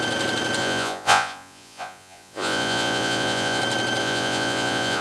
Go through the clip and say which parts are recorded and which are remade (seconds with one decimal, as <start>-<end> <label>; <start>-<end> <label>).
0.0-0.6 recorded; 0.6-3.6 remade; 3.6-4.0 recorded; 4.0-5.0 remade